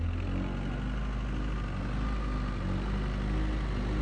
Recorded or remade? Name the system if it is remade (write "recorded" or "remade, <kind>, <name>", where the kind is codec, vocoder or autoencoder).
recorded